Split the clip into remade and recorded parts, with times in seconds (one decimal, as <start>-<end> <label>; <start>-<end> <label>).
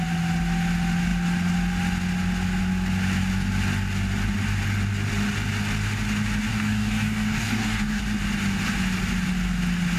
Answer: 0.0-6.5 recorded; 6.5-8.0 remade; 8.0-10.0 recorded